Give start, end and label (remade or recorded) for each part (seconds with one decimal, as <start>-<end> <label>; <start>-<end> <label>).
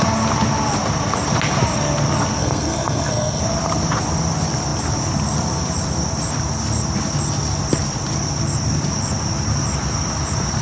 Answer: 0.0-2.4 recorded; 2.4-3.4 remade; 3.4-10.6 recorded